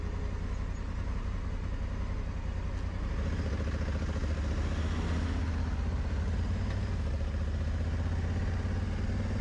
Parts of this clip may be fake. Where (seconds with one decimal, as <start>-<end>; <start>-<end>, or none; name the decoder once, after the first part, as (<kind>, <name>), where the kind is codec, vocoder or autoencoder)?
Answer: none